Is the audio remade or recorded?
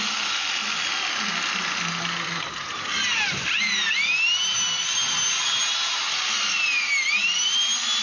recorded